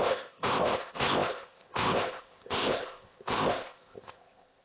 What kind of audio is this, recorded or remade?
remade